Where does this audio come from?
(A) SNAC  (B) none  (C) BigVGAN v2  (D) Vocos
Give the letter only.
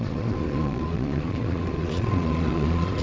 D